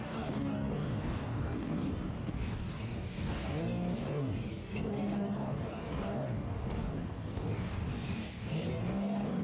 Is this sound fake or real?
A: fake